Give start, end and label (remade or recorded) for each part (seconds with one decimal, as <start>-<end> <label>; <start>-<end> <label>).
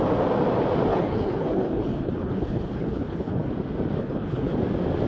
0.0-0.9 recorded; 0.9-3.5 remade; 3.5-4.0 recorded; 4.0-4.6 remade; 4.6-5.1 recorded